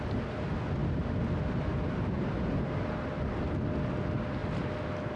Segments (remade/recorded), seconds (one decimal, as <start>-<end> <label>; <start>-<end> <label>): 0.0-5.2 recorded

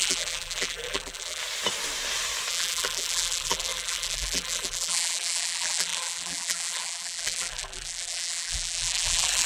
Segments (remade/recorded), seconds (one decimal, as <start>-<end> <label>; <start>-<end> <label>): 0.0-1.4 remade; 1.4-2.5 recorded; 2.5-9.5 remade

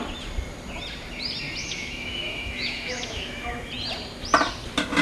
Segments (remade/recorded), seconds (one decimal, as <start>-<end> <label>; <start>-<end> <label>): 0.0-1.6 recorded; 1.6-3.7 remade; 3.7-5.0 recorded